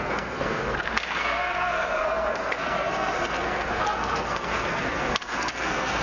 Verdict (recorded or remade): remade